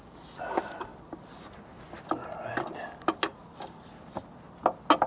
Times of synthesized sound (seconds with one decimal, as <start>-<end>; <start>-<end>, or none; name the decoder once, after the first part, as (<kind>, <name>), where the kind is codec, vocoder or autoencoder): none